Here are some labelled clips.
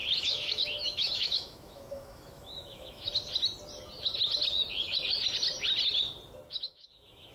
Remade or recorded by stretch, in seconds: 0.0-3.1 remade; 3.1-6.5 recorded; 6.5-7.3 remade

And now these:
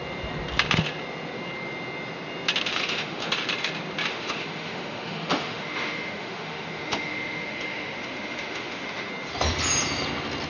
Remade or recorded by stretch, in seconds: 0.0-2.7 recorded; 2.7-3.3 remade; 3.3-4.1 recorded; 4.1-9.1 remade; 9.1-10.5 recorded

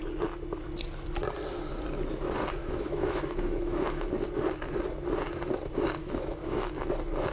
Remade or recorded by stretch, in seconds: 0.0-2.6 recorded; 2.6-4.1 remade; 4.1-6.0 recorded; 6.0-6.7 remade; 6.7-7.3 recorded

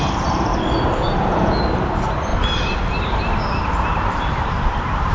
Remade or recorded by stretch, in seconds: 0.0-5.1 recorded

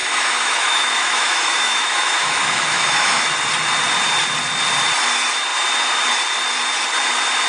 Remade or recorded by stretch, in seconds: 0.0-3.2 remade; 3.2-7.5 recorded